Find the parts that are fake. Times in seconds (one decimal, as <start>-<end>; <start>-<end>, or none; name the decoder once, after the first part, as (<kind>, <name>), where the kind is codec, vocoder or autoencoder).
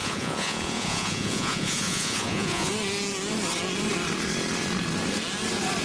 0.0-2.7 (vocoder, Vocos)